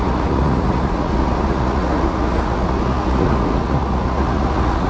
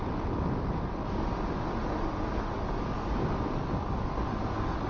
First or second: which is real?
second